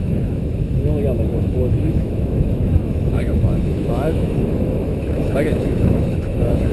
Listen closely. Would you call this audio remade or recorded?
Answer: remade